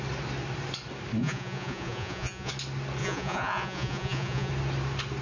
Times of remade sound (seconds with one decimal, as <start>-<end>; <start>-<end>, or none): 1.2-2.5; 3.0-4.5

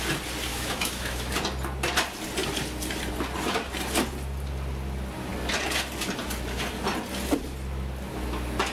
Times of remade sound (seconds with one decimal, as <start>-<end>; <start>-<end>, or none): 0.5-1.3